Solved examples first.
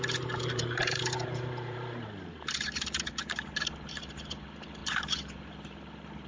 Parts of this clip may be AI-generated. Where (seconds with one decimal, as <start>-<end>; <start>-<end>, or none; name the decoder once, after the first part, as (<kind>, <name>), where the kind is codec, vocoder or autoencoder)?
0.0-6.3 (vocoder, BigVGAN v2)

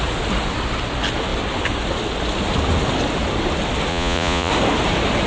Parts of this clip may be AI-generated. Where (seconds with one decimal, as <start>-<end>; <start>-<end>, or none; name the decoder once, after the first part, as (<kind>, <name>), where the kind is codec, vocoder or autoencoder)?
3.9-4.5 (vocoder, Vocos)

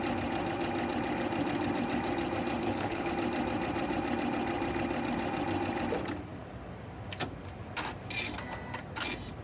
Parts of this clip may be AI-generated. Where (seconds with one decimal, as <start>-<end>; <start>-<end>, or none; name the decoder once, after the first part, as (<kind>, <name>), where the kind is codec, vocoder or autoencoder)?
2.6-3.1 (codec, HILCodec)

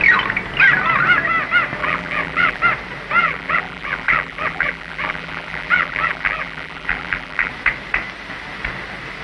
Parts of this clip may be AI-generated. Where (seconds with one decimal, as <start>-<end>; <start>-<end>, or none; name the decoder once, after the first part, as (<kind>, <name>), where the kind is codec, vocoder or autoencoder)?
1.8-2.6 (vocoder, BigVGAN v2); 3.2-7.5